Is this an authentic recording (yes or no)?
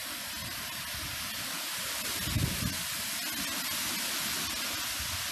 yes